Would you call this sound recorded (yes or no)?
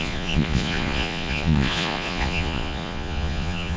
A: no